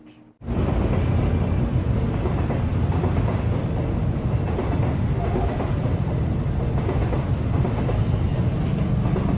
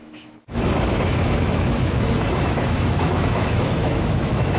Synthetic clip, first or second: second